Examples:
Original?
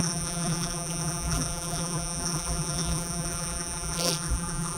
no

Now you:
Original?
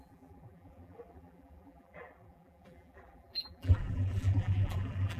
no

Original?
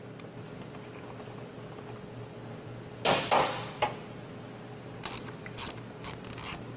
yes